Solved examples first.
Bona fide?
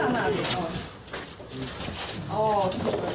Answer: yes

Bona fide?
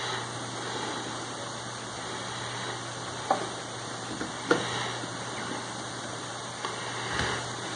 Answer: no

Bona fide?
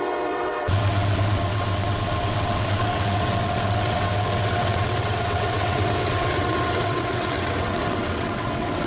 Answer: no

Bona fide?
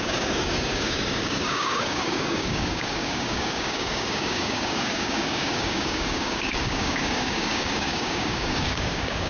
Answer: no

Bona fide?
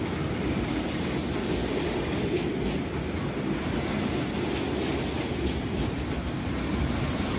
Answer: yes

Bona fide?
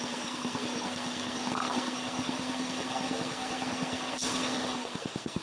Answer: no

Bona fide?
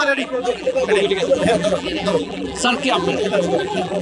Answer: no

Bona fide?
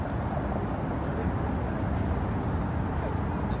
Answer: yes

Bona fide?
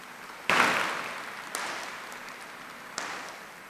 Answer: yes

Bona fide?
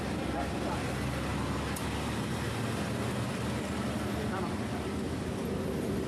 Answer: yes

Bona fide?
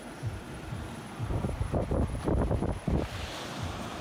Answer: no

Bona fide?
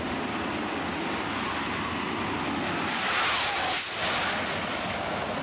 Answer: yes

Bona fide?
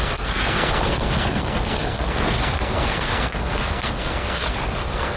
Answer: no